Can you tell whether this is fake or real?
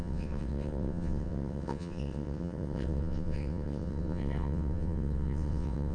fake